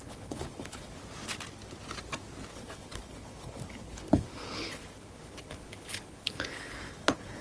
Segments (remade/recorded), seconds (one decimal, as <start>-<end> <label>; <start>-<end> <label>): 0.0-1.0 remade; 1.0-2.5 recorded; 2.5-7.4 remade